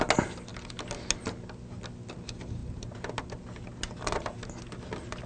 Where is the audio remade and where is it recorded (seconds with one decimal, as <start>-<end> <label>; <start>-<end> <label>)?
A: 0.0-5.3 recorded